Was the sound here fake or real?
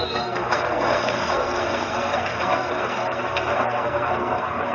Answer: fake